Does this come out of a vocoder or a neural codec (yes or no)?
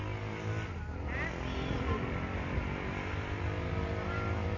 no